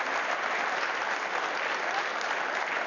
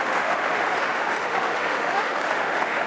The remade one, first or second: second